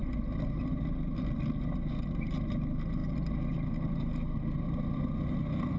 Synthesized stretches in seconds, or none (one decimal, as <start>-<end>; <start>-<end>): none

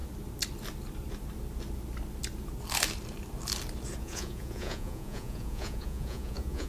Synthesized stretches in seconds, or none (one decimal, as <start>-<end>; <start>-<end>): 4.0-6.7

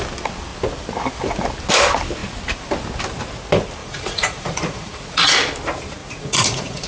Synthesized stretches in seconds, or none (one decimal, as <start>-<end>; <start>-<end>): 3.8-5.3; 6.0-6.9

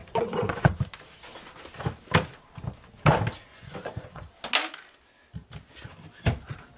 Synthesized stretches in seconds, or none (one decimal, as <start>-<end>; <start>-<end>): 0.0-0.8; 3.5-4.3

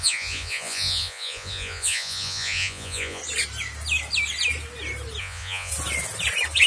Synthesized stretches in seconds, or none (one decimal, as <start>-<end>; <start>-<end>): 0.0-3.2; 5.2-5.7

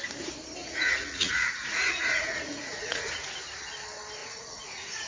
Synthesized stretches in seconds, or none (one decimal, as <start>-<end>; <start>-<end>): 0.6-3.3; 4.2-5.1

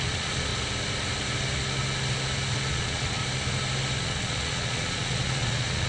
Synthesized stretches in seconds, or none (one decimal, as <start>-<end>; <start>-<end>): 0.0-0.5; 2.7-3.2; 4.0-5.9